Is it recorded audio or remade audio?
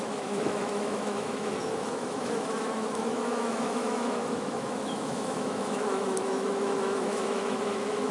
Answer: remade